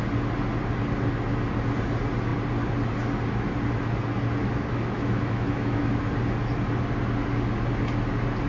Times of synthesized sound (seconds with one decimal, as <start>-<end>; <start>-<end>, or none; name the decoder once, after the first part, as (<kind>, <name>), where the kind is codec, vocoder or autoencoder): 4.4-5.9 (autoencoder, DAC-VAE)